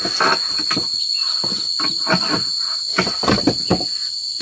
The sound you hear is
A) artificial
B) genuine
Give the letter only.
B